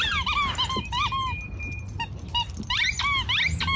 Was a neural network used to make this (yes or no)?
no